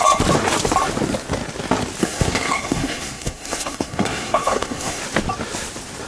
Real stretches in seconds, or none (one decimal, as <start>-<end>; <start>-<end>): 0.0-2.0; 5.0-6.1

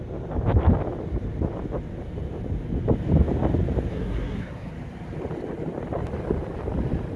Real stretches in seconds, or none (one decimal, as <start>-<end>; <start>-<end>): 0.0-3.9; 4.7-7.2

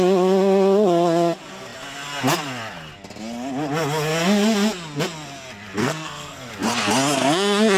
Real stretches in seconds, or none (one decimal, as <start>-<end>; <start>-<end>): 0.0-5.8; 6.5-7.8